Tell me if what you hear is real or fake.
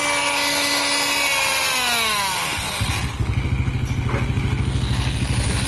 real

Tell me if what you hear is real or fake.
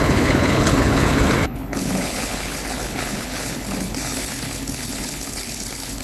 fake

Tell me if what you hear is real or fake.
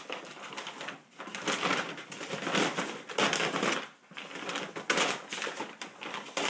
real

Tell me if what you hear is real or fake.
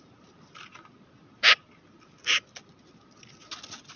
real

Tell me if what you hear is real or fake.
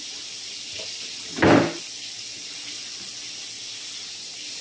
real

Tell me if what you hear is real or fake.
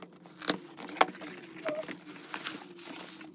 real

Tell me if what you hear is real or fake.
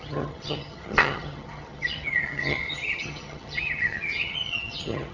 fake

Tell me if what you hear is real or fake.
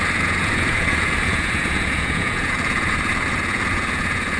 fake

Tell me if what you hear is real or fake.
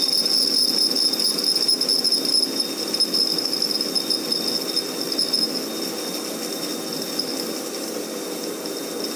real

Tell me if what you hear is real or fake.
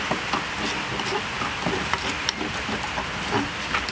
real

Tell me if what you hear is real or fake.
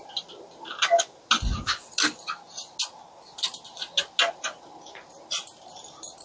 real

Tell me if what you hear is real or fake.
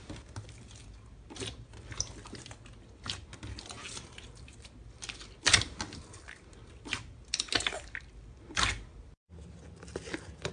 real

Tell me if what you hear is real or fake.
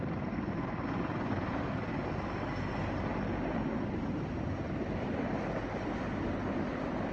real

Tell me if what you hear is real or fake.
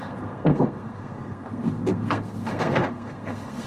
fake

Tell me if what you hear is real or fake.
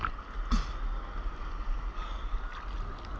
real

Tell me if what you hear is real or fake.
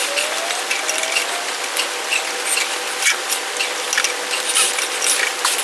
real